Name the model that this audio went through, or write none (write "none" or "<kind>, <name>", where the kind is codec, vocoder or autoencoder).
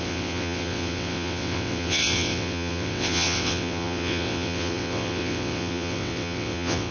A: vocoder, WaveNeXt